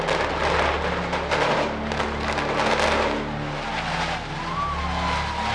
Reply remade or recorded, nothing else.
recorded